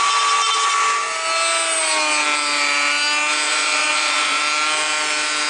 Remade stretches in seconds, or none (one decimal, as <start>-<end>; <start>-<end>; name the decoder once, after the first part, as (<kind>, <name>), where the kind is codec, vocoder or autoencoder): 3.5-4.4 (vocoder, Vocos)